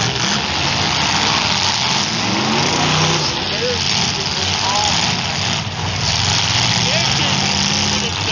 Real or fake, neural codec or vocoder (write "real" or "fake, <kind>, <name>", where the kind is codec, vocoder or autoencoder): real